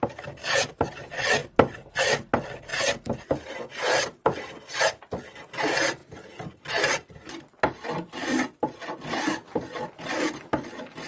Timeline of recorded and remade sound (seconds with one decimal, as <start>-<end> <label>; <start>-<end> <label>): 0.0-11.1 recorded